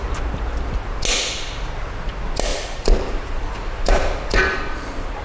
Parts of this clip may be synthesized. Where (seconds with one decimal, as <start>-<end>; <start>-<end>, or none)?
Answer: 2.5-4.4